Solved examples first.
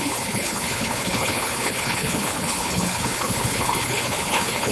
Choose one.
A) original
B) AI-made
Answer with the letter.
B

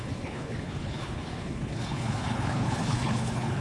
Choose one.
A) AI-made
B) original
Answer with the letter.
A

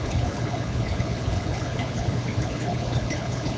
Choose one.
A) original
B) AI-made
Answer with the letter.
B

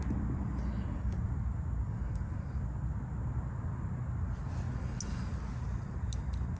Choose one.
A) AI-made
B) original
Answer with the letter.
B